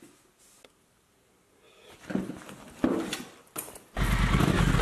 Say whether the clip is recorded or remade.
recorded